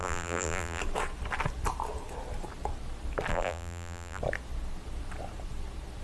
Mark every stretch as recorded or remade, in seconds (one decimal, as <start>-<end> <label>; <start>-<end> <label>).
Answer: 0.0-0.8 remade; 0.8-3.3 recorded; 3.3-4.2 remade; 4.2-6.0 recorded